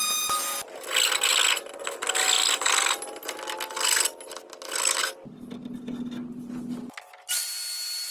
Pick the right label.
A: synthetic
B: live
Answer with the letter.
B